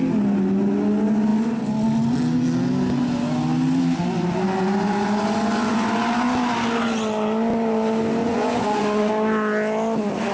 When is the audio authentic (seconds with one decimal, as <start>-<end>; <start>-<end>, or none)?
0.0-8.2; 9.1-10.3